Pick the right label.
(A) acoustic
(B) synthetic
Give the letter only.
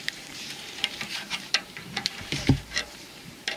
B